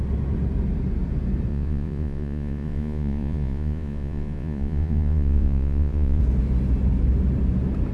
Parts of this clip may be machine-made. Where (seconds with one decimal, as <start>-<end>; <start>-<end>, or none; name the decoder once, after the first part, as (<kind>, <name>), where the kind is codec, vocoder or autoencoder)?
1.5-6.2 (vocoder, Vocos)